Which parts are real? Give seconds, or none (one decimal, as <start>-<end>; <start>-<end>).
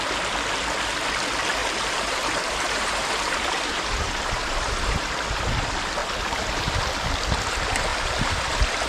0.0-1.6; 5.1-6.0; 6.6-7.9